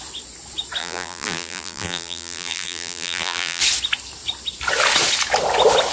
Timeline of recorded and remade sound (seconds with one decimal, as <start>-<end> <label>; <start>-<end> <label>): 0.0-0.8 recorded; 0.8-3.6 remade; 3.6-5.9 recorded

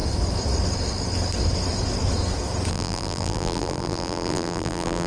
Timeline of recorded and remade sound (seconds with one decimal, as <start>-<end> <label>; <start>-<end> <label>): 0.0-2.7 recorded; 2.7-5.1 remade

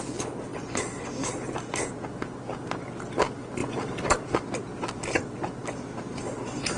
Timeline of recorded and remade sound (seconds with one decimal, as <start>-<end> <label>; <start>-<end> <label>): 0.0-6.8 recorded